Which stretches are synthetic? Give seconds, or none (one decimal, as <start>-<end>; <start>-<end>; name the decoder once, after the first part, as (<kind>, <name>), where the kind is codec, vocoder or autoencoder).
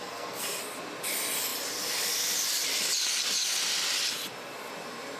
0.0-0.6 (codec, SNAC)